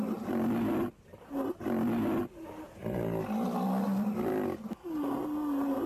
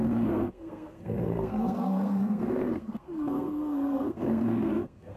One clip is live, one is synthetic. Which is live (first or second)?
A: first